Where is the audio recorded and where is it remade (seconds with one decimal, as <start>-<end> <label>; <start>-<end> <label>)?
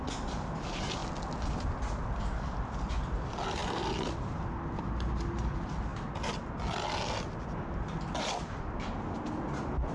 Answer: 0.0-9.9 recorded